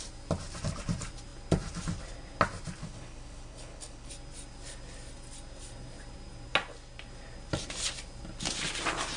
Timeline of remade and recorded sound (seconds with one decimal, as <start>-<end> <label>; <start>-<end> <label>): 0.0-2.8 recorded; 2.8-4.1 remade; 4.1-9.2 recorded